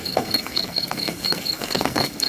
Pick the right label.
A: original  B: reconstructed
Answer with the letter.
B